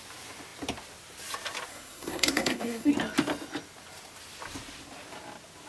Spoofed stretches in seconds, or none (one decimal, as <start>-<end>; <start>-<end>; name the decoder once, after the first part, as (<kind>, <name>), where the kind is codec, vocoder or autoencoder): 1.7-2.9 (codec, SNAC)